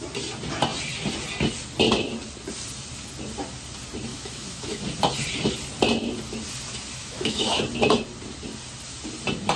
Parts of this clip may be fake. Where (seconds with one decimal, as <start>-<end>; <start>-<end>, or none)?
4.1-4.8; 7.0-7.6